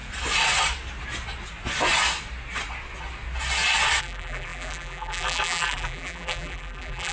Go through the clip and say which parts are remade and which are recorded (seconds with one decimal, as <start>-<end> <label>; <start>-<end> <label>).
0.0-4.0 recorded; 4.0-7.1 remade